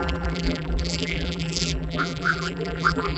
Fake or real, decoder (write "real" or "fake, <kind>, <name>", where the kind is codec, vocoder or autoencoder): fake, vocoder, BigVGAN v2